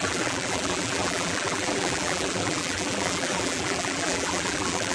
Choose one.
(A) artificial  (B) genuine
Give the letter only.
A